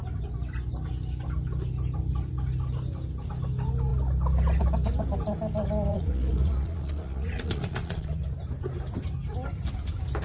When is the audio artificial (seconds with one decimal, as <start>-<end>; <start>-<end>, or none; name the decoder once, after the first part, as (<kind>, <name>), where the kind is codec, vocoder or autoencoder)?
5.9-8.2 (vocoder, Vocos)